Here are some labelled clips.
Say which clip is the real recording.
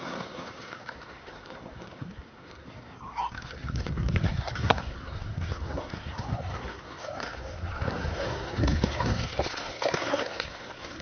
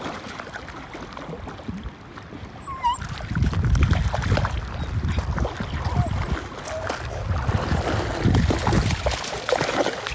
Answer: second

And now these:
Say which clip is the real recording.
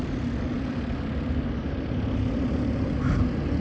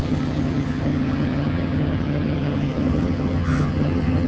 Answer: first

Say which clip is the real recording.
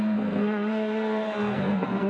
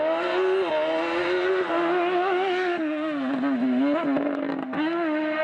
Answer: second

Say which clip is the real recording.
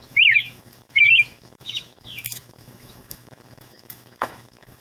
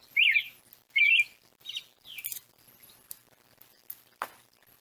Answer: second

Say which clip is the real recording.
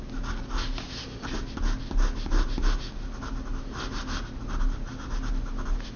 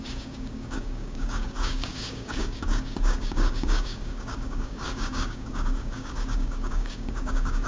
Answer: first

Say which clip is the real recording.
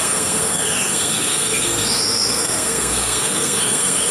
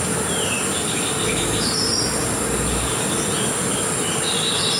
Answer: second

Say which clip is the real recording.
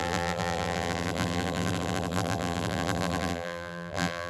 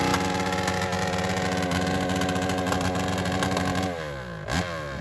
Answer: second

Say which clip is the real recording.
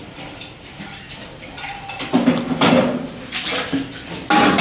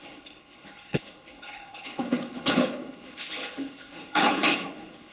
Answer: first